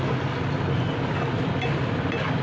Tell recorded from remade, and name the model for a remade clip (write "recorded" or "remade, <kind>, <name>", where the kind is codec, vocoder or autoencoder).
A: recorded